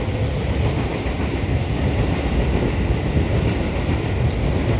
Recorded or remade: recorded